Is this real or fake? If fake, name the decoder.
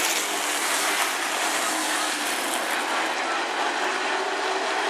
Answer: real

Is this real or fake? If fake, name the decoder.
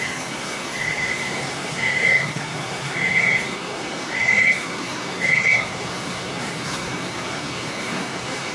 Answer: fake, codec, SNAC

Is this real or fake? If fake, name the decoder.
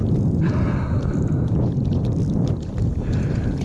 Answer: fake, vocoder, BigVGAN v2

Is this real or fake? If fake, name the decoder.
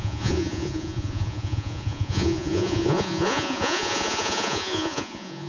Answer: fake, vocoder, Vocos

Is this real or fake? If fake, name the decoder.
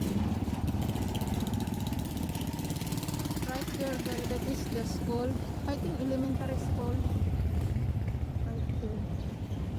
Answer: fake, vocoder, BigVGAN v2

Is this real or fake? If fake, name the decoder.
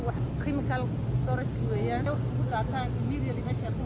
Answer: real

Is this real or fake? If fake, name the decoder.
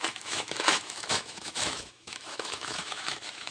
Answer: fake, autoencoder, DAC-VAE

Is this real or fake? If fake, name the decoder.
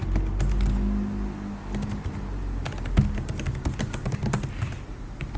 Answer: real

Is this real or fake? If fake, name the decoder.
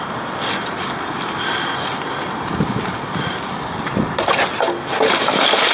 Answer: real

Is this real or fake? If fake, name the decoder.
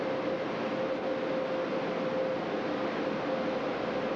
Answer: real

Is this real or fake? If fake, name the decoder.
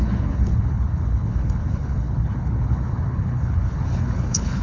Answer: fake, codec, HILCodec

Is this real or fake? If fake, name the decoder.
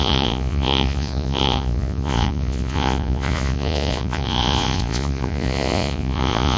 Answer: fake, vocoder, Vocos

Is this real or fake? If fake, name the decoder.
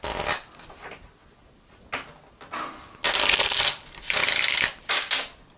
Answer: real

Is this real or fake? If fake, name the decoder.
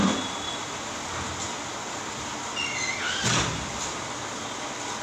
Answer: real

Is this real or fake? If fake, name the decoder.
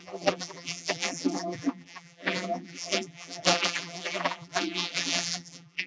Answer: fake, vocoder, BigVGAN v2